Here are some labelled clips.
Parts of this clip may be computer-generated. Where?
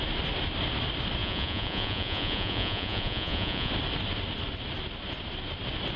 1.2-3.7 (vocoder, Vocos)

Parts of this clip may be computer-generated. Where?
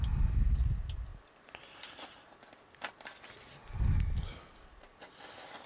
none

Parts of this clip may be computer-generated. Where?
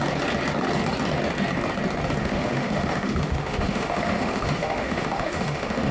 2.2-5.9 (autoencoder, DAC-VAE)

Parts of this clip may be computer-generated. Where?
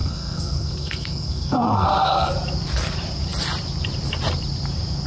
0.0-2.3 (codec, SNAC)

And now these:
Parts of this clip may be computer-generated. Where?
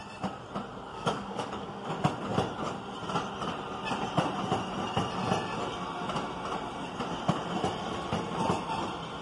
0.9-1.9 (codec, DAC)